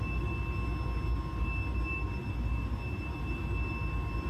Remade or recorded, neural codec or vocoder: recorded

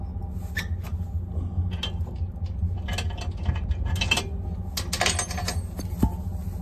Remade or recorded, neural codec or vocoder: recorded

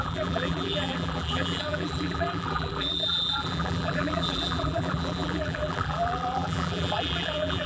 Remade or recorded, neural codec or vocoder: remade, vocoder, BigVGAN v2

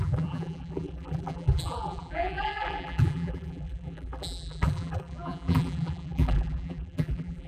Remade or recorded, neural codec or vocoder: remade, vocoder, BigVGAN v2